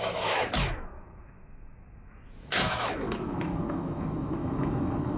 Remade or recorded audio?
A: remade